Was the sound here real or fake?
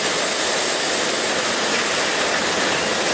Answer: real